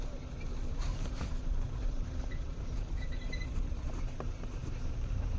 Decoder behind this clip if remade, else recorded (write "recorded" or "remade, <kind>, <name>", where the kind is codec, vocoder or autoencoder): remade, vocoder, BigVGAN v2